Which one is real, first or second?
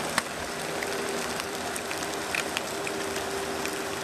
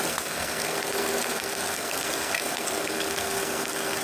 first